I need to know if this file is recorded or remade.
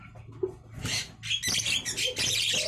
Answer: recorded